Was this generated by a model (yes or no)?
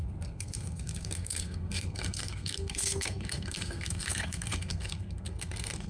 yes